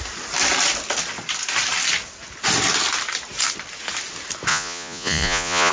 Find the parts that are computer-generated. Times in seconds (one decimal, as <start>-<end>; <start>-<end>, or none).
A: 4.5-5.7